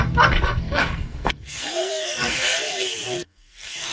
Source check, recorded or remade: remade